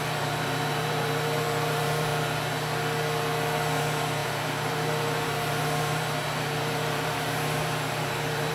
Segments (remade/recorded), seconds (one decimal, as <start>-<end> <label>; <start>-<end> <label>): 0.0-2.1 remade; 2.1-3.8 recorded; 3.8-8.5 remade